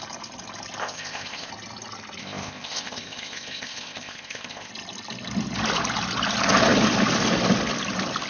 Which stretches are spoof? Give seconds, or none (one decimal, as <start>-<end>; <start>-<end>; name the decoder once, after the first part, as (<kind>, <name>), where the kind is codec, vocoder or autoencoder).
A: 0.8-1.5 (codec, ZipCodec); 2.2-4.7